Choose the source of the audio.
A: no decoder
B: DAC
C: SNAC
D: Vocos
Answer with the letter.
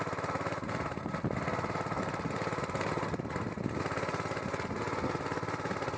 A